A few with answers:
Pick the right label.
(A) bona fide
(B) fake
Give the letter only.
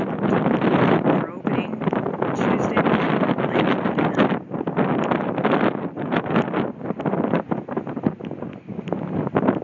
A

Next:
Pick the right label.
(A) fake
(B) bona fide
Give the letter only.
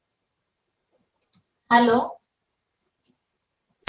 A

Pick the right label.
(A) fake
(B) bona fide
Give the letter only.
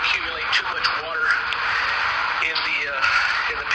A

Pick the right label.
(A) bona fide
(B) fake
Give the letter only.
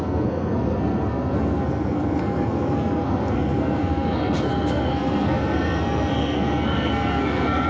B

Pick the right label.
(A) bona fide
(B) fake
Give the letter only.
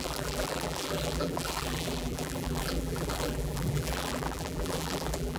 B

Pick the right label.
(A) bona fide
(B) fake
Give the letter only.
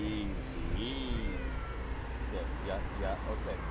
A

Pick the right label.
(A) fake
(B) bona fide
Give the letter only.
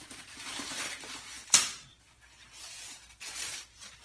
A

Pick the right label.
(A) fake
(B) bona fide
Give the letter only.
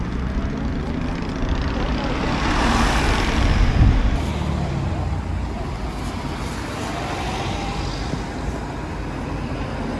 B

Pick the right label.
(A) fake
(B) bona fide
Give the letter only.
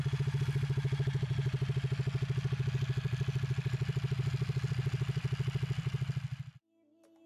B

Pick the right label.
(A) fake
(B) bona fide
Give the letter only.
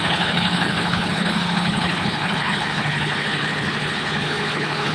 A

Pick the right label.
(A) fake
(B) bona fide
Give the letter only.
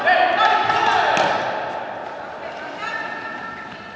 B